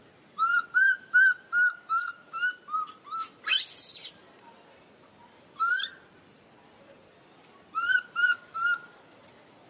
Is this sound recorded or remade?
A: recorded